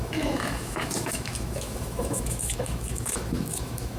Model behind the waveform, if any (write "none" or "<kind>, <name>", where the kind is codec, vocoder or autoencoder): autoencoder, DAC-VAE